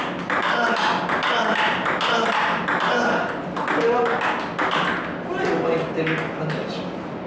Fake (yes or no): no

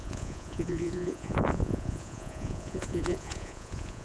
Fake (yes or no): yes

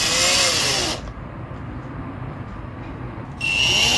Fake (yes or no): no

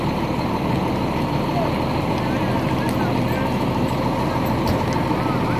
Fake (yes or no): no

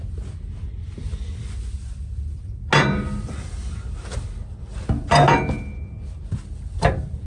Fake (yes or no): no